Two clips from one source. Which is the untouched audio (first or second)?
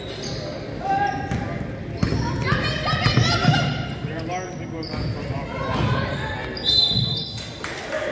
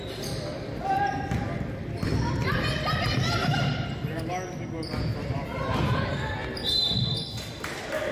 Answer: first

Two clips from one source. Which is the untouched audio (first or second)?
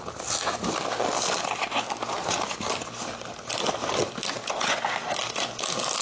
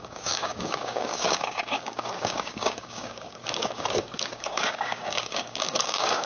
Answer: first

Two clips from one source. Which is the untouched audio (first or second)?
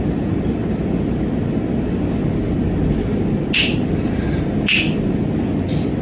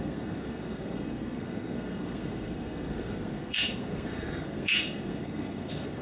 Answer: first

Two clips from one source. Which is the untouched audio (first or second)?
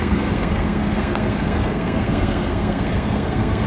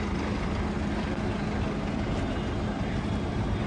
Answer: second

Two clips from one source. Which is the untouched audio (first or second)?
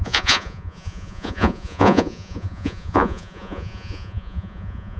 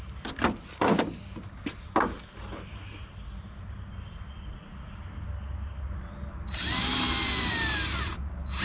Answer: second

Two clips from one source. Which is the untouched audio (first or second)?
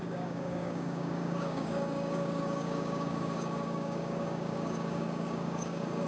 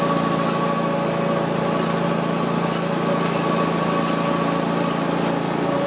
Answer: second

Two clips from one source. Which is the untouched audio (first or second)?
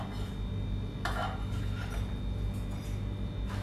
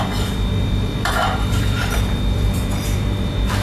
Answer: first